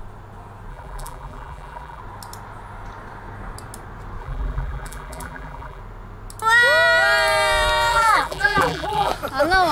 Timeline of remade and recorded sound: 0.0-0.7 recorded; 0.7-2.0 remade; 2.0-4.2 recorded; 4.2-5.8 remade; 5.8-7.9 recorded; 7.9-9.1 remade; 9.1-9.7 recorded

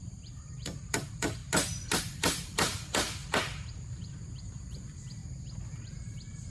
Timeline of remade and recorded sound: 0.0-1.4 remade; 1.4-2.0 recorded; 2.0-5.2 remade; 5.2-5.9 recorded; 5.9-6.5 remade

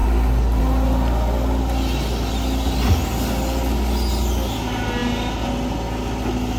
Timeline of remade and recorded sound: 0.0-6.6 recorded

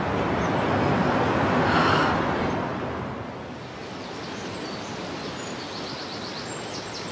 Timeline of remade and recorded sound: 0.0-1.0 recorded; 1.0-1.8 remade; 1.8-7.1 recorded

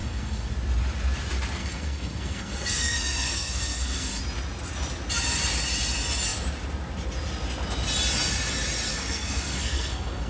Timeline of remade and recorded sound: 0.0-0.5 remade; 0.5-1.6 recorded; 1.6-4.2 remade; 4.2-8.9 recorded; 8.9-10.3 remade

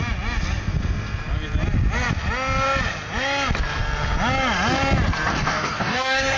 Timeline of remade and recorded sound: 0.0-5.3 recorded; 5.3-6.4 remade